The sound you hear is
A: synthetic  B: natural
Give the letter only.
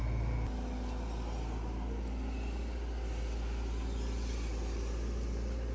B